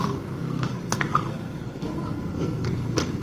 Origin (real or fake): fake